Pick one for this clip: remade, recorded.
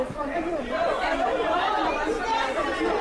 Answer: remade